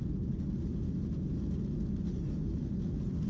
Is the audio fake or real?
real